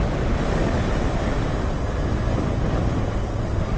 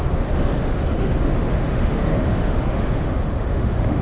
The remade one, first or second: second